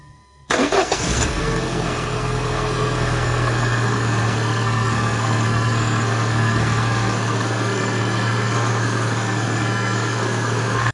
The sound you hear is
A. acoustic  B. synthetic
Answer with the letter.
B